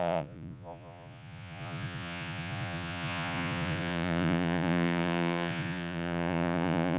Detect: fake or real fake